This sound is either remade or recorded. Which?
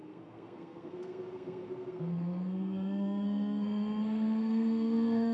remade